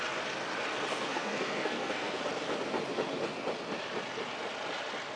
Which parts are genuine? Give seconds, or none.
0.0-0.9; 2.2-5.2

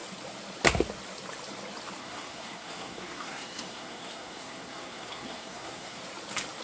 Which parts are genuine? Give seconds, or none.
0.0-2.0; 6.0-6.6

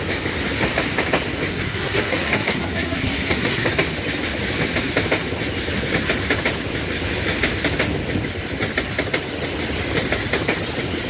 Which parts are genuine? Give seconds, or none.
0.0-1.5; 3.7-11.1

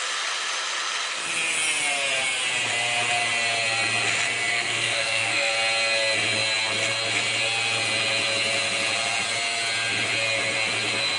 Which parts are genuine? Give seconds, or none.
0.0-4.5; 5.5-11.2

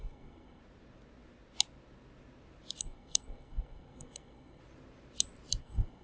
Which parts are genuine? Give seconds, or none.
0.6-2.8; 4.6-5.6

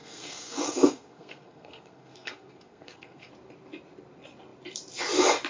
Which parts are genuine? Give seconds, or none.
3.3-5.5